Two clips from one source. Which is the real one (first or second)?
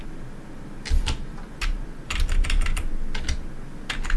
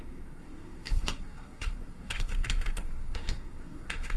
first